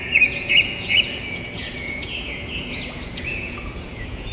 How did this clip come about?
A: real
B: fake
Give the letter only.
B